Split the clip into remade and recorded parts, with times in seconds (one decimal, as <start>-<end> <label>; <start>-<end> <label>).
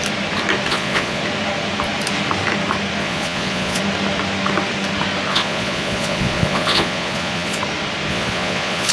0.0-0.7 recorded; 0.7-1.2 remade; 1.2-3.0 recorded; 3.0-3.8 remade; 3.8-5.3 recorded; 5.3-7.6 remade; 7.6-8.1 recorded; 8.1-8.9 remade